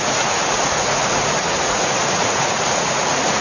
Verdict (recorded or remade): remade